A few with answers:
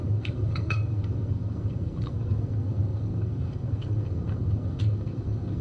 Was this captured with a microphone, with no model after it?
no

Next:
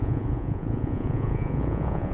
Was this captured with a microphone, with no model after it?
no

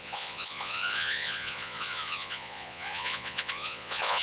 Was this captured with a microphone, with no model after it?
no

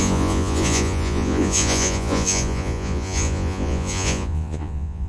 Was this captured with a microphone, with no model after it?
no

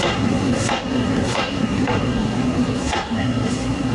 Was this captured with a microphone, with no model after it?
no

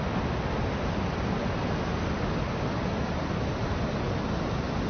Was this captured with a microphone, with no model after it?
yes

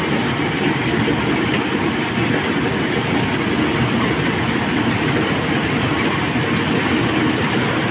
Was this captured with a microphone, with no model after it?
yes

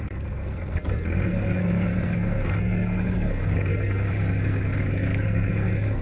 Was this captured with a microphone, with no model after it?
no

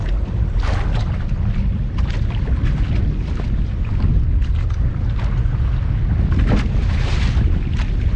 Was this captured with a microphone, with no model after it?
yes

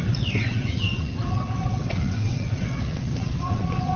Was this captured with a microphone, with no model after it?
no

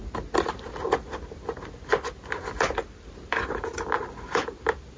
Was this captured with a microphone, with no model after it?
yes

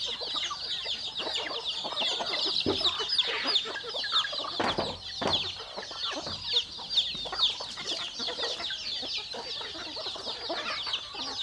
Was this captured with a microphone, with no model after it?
yes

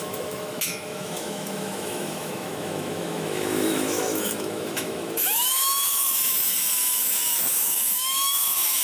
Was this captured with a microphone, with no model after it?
no